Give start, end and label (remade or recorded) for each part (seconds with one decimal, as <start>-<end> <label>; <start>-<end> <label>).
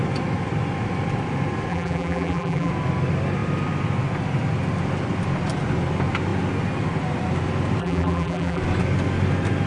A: 0.0-1.7 recorded; 1.7-2.7 remade; 2.7-7.8 recorded; 7.8-8.6 remade; 8.6-9.7 recorded